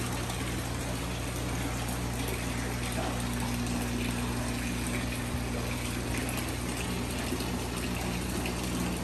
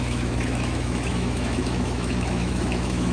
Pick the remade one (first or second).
second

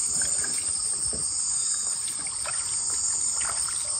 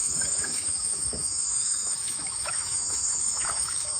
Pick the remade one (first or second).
second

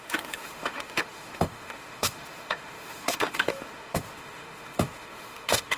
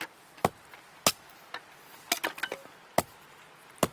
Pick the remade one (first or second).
first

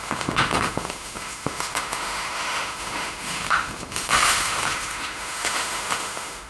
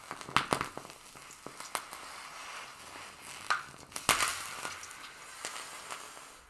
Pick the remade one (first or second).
first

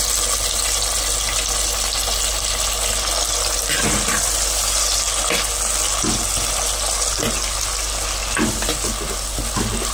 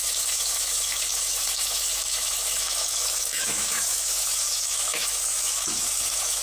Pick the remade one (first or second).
second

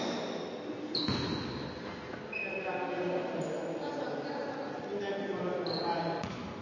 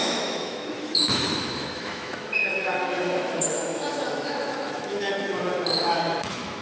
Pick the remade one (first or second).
second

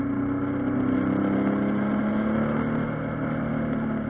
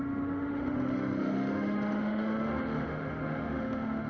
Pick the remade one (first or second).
second